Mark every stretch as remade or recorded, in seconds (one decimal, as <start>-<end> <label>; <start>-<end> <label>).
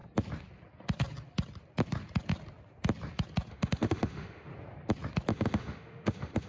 0.0-3.5 recorded; 3.5-4.5 remade; 4.5-5.3 recorded; 5.3-6.5 remade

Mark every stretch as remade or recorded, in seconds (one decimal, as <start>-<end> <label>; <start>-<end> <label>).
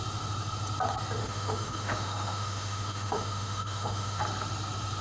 0.0-1.2 recorded; 1.2-4.2 remade; 4.2-5.0 recorded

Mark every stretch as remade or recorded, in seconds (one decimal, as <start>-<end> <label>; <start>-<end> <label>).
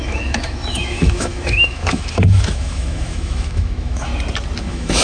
0.0-4.1 remade; 4.1-4.6 recorded; 4.6-5.0 remade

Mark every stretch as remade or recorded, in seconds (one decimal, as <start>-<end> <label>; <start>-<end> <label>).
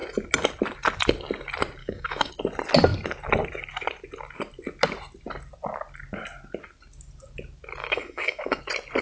0.0-1.8 recorded; 1.8-2.3 remade; 2.3-7.8 recorded; 7.8-8.6 remade; 8.6-9.0 recorded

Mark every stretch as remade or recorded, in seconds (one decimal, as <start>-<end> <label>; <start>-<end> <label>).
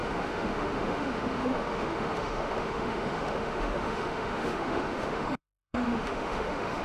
0.0-6.8 remade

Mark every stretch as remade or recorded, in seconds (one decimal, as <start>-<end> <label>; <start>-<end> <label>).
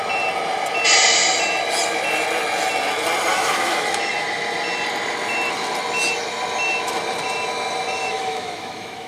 0.0-3.3 recorded; 3.3-4.1 remade; 4.1-8.0 recorded; 8.0-9.1 remade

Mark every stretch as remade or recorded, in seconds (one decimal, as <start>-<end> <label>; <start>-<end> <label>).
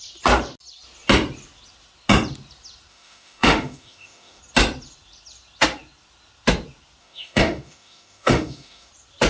0.0-2.9 recorded; 2.9-4.4 remade; 4.4-7.0 recorded; 7.0-8.9 remade; 8.9-9.3 recorded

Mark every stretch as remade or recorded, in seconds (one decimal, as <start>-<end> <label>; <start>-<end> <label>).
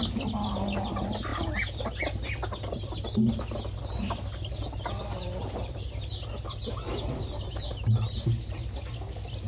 0.0-9.5 recorded